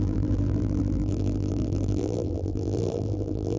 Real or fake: fake